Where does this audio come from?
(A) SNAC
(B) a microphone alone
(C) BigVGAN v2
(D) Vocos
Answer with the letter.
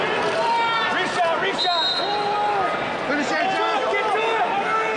B